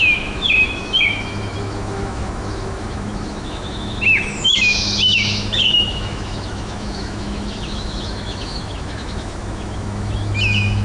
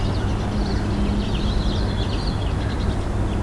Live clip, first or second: second